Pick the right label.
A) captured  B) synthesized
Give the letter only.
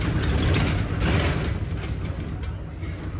A